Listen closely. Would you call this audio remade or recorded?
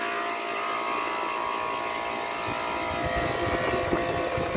recorded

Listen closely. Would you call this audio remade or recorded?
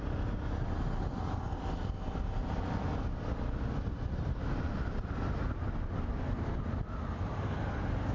recorded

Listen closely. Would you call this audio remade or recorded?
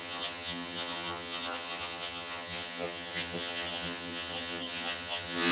remade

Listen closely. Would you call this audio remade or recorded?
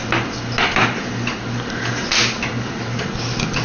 recorded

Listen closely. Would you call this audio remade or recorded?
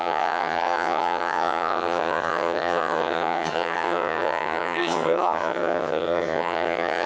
remade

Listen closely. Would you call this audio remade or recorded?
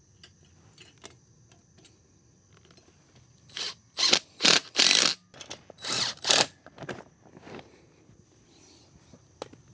recorded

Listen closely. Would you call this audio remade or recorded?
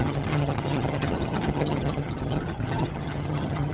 remade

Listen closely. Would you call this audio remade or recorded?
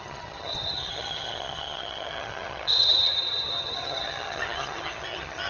remade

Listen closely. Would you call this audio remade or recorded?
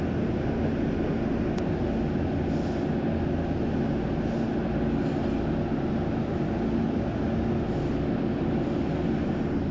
recorded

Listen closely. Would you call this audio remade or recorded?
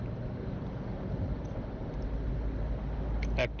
recorded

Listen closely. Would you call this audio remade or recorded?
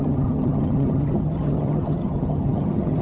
remade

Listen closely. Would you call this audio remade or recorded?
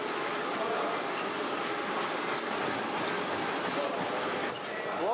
recorded